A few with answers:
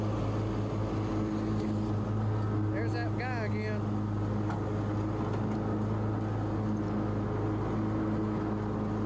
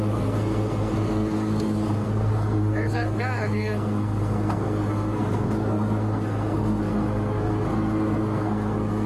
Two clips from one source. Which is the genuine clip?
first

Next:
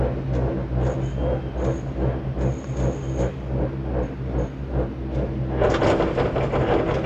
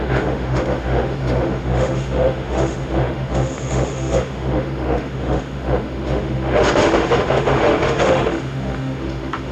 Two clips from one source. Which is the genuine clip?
first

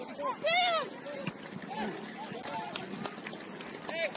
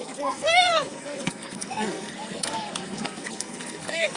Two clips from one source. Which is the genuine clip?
first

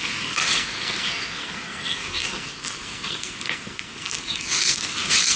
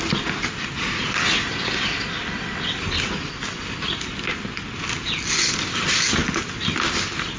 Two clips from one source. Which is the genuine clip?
second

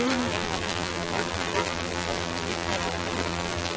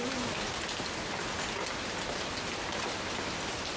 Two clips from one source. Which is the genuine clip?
second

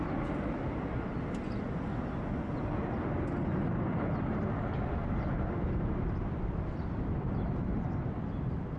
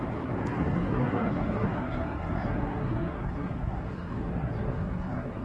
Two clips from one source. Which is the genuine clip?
first